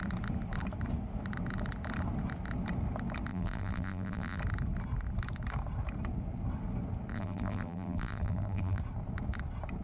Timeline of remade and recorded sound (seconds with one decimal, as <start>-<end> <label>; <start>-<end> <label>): 0.0-3.3 recorded; 3.3-4.4 remade; 4.4-7.1 recorded; 7.1-8.8 remade; 8.8-9.8 recorded

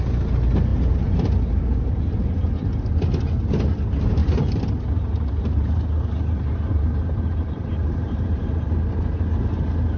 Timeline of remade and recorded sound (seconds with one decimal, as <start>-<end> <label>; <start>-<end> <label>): 0.0-0.7 recorded; 0.7-2.1 remade; 2.1-4.2 recorded; 4.2-8.7 remade; 8.7-10.0 recorded

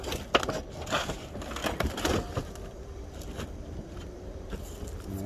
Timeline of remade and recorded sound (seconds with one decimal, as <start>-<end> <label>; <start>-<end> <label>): 0.0-1.6 recorded; 1.6-4.8 remade; 4.8-5.3 recorded

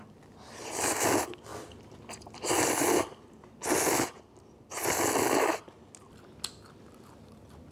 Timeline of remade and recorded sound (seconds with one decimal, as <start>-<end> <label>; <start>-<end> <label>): 0.0-7.7 recorded

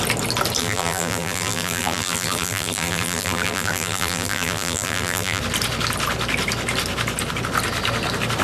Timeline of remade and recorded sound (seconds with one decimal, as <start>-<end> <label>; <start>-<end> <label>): 0.0-0.6 recorded; 0.6-5.4 remade; 5.4-8.4 recorded

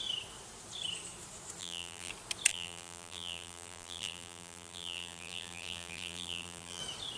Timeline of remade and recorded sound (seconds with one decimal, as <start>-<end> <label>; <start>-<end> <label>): 0.0-1.6 recorded; 1.6-2.1 remade; 2.1-2.5 recorded; 2.5-6.8 remade; 6.8-7.2 recorded

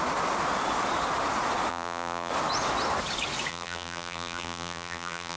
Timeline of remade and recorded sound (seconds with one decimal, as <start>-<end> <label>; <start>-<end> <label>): 0.0-1.7 recorded; 1.7-2.3 remade; 2.3-3.5 recorded; 3.5-5.4 remade